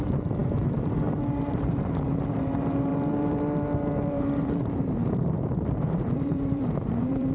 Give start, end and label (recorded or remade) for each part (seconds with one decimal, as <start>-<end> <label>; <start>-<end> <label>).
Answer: 0.0-7.3 remade